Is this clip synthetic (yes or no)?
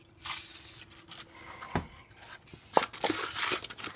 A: no